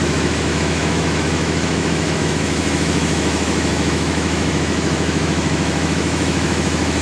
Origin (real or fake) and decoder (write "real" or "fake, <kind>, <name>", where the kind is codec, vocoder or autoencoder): fake, autoencoder, DAC-VAE